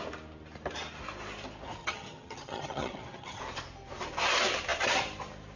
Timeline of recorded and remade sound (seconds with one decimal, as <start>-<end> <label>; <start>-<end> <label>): 0.0-1.8 recorded; 1.8-3.4 remade; 3.4-5.6 recorded

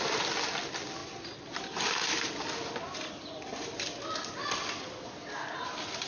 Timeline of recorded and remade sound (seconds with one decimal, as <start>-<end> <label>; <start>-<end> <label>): 0.0-6.1 recorded